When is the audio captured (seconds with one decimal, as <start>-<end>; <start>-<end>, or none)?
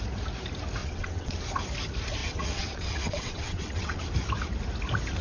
0.0-0.8; 1.4-2.2; 4.0-5.2